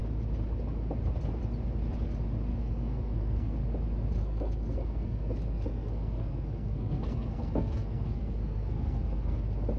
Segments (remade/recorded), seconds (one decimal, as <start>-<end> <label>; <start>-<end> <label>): 0.0-2.5 recorded; 2.5-3.6 remade; 3.6-4.2 recorded; 4.2-9.4 remade; 9.4-9.8 recorded